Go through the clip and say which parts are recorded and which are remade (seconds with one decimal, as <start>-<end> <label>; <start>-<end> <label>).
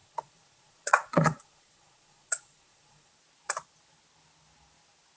0.0-3.1 remade; 3.1-5.2 recorded